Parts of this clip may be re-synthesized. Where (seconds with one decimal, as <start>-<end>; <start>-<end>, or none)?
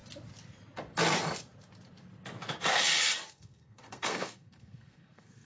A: 3.3-5.5